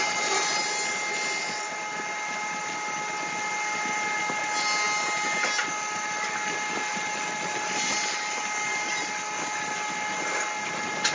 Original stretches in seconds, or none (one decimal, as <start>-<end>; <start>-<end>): 0.0-11.1